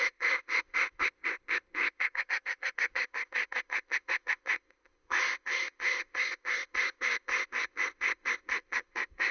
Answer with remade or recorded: remade